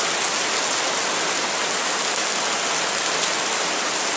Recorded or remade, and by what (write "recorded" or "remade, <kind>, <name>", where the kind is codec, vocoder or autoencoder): recorded